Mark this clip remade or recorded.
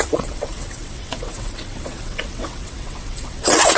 remade